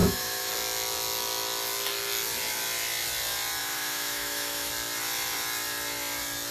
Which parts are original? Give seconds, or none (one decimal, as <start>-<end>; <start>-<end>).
0.5-3.6; 4.7-6.5